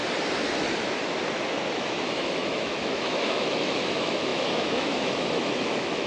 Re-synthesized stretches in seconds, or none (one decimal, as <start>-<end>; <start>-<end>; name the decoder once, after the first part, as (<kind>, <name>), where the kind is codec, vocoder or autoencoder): 1.7-6.1 (autoencoder, DAC-VAE)